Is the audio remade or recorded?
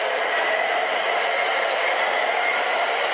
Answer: recorded